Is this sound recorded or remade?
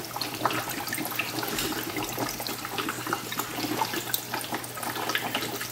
recorded